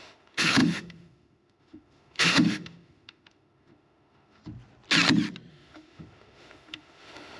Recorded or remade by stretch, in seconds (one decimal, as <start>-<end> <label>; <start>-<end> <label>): 0.0-4.4 remade; 4.4-5.5 recorded; 5.5-7.4 remade